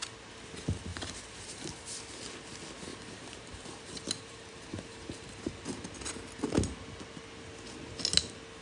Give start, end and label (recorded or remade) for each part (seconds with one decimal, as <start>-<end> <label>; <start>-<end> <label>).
0.0-0.9 recorded; 0.9-2.0 remade; 2.0-2.9 recorded; 2.9-5.9 remade; 5.9-8.6 recorded